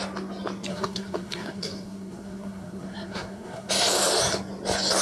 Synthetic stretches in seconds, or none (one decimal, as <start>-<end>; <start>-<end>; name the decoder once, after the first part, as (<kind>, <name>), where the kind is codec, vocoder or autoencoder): 0.7-3.7 (codec, SNAC)